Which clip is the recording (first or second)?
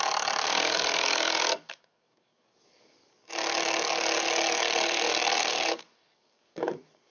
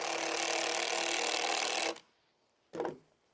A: second